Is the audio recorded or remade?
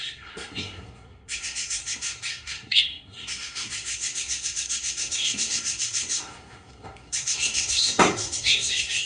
remade